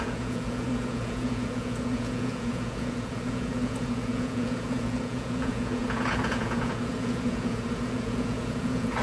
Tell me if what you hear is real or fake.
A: fake